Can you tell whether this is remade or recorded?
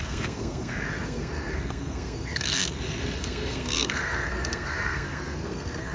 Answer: remade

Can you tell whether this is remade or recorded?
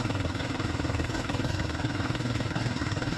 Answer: remade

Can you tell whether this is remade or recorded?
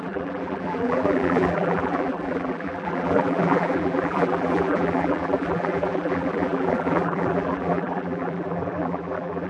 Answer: remade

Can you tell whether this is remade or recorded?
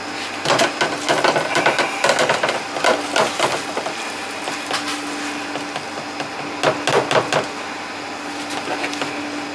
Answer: recorded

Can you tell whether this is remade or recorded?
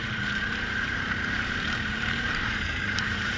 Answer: remade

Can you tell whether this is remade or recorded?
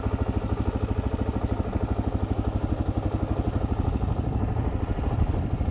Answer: recorded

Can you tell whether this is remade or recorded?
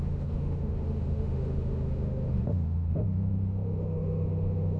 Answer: remade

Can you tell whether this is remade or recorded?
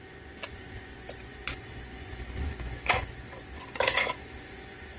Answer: remade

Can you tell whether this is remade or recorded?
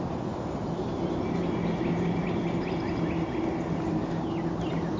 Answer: recorded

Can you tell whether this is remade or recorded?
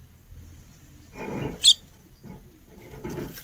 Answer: recorded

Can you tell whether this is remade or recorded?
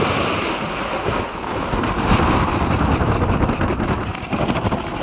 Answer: recorded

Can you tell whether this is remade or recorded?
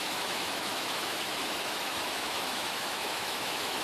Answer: remade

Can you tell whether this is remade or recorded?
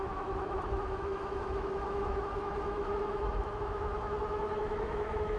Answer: remade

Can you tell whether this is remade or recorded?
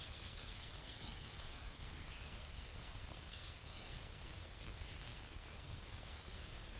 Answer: remade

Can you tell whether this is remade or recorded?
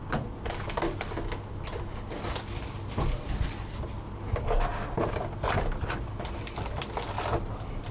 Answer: recorded